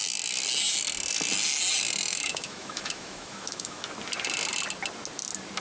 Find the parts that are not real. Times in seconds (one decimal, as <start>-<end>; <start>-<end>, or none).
2.1-3.8